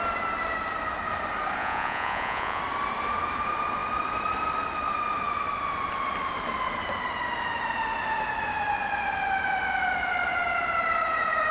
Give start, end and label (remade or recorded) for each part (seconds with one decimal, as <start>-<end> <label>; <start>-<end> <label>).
0.0-1.6 recorded; 1.6-2.6 remade; 2.6-11.5 recorded